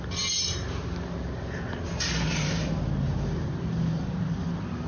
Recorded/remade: recorded